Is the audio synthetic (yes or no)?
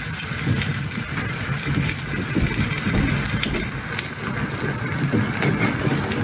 no